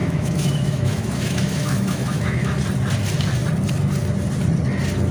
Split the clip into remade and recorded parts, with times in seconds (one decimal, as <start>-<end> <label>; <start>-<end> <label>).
0.0-2.6 remade; 2.6-5.1 recorded